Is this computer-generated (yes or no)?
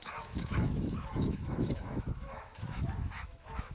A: yes